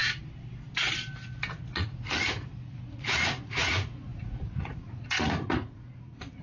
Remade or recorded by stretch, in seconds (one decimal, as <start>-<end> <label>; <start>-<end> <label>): 0.0-1.7 recorded; 1.7-6.4 remade

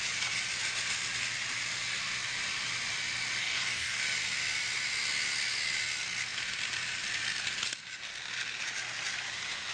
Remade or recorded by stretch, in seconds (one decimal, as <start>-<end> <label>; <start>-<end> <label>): 0.0-3.4 recorded; 3.4-4.0 remade; 4.0-9.7 recorded

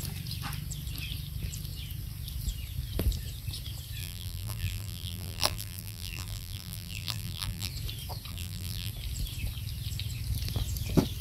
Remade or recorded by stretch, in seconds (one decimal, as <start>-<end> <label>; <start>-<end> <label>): 0.0-4.0 recorded; 4.0-7.7 remade; 7.7-8.3 recorded; 8.3-8.9 remade; 8.9-11.2 recorded

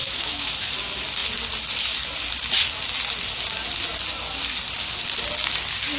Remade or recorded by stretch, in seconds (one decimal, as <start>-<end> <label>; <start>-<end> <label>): 0.0-0.5 remade; 0.5-6.0 recorded

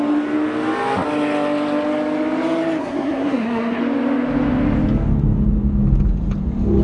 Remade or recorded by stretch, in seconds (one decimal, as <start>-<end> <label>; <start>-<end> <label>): 0.0-2.8 recorded; 2.8-3.8 remade; 3.8-6.8 recorded

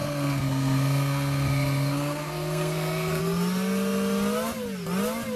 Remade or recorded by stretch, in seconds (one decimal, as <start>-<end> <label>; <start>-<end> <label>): 0.0-3.2 remade; 3.2-5.4 recorded

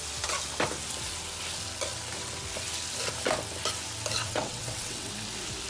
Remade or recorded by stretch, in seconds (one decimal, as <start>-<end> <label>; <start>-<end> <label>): 0.0-4.2 recorded; 4.2-5.1 remade; 5.1-5.7 recorded